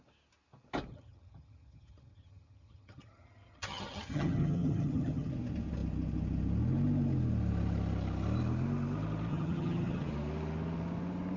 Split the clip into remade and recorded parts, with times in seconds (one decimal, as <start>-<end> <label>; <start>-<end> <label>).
0.0-0.9 recorded; 0.9-5.3 remade; 5.3-9.3 recorded; 9.3-10.1 remade; 10.1-11.4 recorded